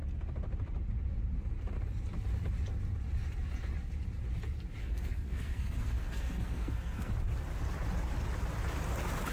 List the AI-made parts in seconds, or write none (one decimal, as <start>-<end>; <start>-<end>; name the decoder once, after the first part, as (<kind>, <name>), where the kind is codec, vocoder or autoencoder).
4.8-7.1 (codec, SNAC)